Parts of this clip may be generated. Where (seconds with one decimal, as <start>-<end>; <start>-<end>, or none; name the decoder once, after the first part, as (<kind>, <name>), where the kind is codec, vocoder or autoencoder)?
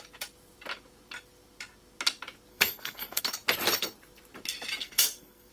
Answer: 2.5-3.2 (codec, SNAC); 4.8-5.5